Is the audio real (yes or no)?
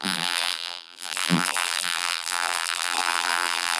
no